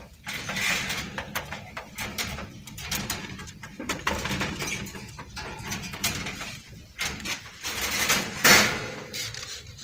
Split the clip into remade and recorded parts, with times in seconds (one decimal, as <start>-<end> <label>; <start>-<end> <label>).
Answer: 0.0-2.1 recorded; 2.1-2.8 remade; 2.8-9.8 recorded